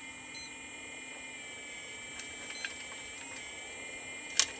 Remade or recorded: recorded